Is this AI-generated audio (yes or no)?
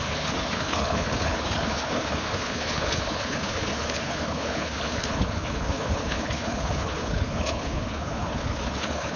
yes